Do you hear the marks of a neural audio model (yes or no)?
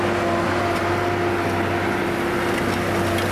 no